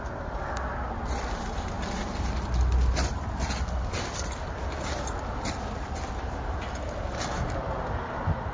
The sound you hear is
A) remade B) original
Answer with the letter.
B